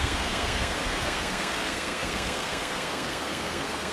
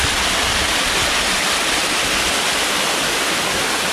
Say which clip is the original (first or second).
second